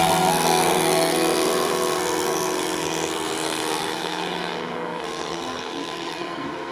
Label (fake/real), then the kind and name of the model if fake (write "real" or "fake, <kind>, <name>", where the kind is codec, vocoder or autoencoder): fake, codec, SNAC